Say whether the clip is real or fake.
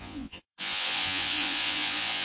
fake